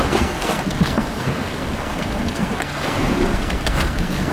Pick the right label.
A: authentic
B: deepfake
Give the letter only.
B